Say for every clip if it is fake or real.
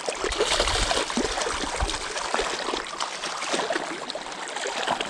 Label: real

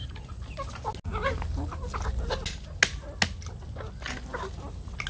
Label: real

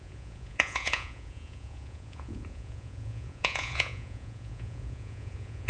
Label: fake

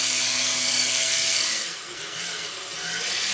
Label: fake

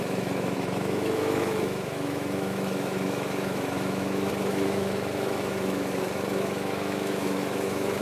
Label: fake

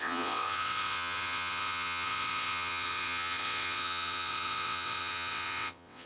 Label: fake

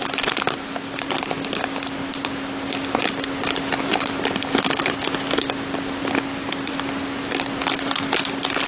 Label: real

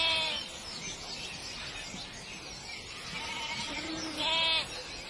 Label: real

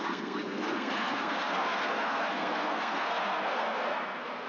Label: fake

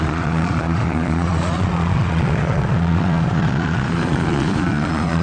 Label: fake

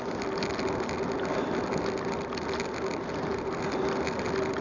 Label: real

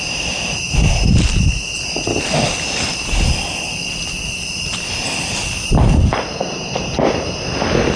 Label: real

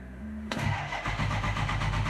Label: fake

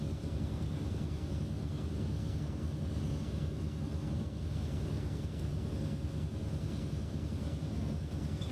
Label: fake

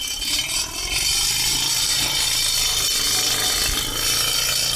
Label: real